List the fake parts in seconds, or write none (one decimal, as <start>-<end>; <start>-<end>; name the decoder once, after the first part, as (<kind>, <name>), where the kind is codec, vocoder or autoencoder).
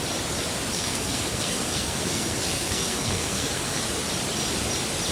0.7-3.8 (codec, SNAC)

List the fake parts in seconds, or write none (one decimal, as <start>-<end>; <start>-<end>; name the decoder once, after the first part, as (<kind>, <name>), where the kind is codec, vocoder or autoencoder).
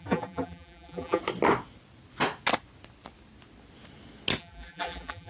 0.0-1.2 (vocoder, BigVGAN v2); 4.4-5.3